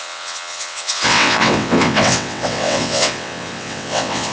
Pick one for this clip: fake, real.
fake